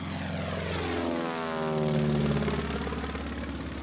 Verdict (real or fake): real